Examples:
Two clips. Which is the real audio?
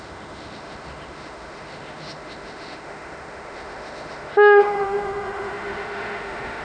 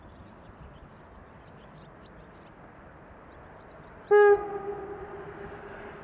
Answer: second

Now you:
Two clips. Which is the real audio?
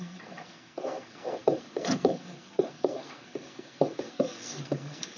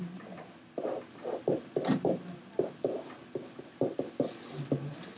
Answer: second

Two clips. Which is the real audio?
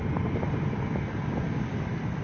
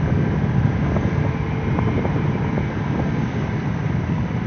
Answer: second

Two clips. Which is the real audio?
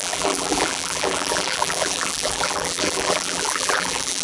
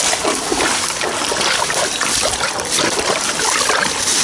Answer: second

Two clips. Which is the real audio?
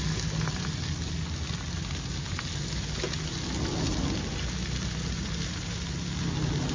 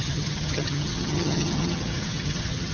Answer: first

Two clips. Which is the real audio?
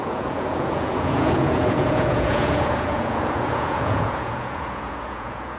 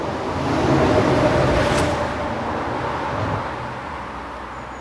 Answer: second